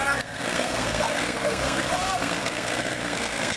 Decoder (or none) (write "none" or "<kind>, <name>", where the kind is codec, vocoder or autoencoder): codec, SNAC